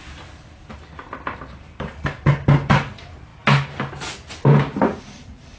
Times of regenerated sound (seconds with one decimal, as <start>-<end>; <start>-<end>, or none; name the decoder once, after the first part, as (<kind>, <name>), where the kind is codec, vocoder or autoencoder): 0.0-3.3 (vocoder, BigVGAN v2); 5.0-5.6